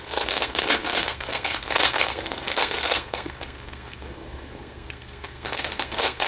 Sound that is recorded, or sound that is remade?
remade